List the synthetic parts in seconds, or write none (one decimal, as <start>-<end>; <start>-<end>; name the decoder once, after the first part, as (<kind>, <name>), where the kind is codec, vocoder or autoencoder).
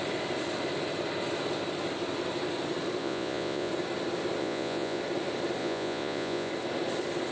3.0-3.7 (vocoder, Vocos); 4.4-5.0; 5.6-6.5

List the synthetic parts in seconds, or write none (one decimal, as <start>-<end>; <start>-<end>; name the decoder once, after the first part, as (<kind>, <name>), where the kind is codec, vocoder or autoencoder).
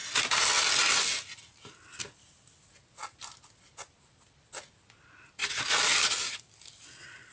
none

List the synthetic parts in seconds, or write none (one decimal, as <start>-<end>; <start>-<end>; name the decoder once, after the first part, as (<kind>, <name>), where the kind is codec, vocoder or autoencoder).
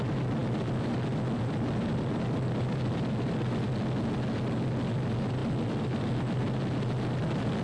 none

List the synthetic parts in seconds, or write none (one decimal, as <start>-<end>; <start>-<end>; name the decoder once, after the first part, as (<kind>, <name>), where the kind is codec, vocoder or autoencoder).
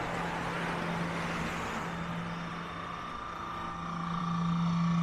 none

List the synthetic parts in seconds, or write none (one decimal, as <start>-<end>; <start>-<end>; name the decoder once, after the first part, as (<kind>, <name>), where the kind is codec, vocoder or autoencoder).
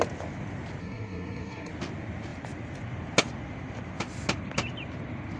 0.8-1.7 (codec, SNAC)